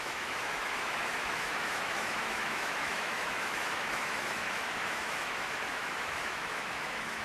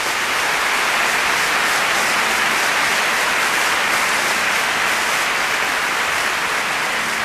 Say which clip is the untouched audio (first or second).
second